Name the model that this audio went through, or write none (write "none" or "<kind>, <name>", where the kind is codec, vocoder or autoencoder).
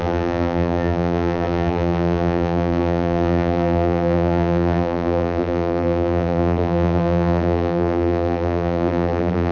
vocoder, BigVGAN v2